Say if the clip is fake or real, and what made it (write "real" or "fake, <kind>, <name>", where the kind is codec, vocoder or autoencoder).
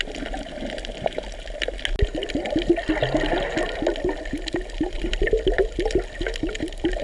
real